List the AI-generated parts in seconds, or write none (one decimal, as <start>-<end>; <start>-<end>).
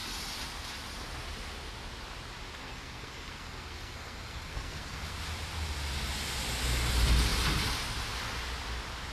2.6-5.2